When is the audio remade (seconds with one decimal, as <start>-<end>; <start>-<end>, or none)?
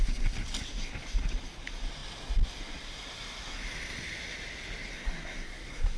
4.9-6.0